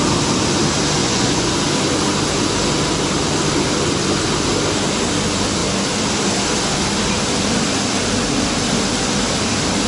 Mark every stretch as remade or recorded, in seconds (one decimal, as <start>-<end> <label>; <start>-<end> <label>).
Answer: 0.0-1.0 recorded; 1.0-1.5 remade; 1.5-9.9 recorded